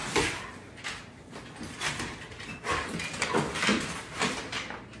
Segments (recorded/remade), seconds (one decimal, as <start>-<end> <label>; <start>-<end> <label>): 0.0-5.0 recorded